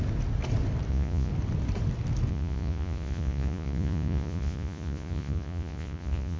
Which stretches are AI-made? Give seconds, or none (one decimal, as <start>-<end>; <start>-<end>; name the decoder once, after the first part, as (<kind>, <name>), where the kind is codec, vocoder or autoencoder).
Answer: 0.9-1.3 (vocoder, Vocos); 2.3-6.4